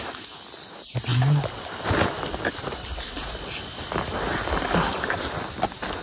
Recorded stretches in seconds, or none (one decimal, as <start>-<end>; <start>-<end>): 0.0-6.0